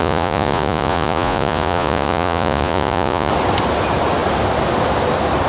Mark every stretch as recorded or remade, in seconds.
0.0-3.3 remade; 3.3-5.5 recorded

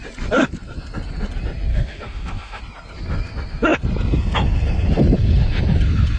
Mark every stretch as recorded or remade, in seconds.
0.0-1.7 recorded; 1.7-2.6 remade; 2.6-6.2 recorded